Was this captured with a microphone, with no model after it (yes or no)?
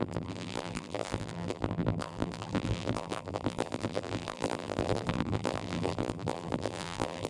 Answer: no